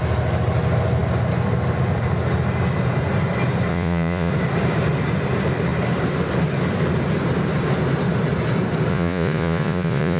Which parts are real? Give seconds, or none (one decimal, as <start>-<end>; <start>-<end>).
0.0-3.7; 4.3-8.9